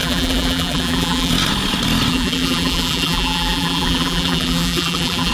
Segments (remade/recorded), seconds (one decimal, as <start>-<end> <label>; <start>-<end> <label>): 0.0-1.3 remade; 1.3-2.1 recorded; 2.1-5.3 remade